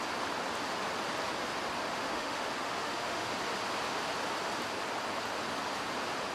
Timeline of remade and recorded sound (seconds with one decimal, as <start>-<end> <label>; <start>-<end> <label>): 0.0-1.9 recorded; 1.9-3.3 remade; 3.3-6.3 recorded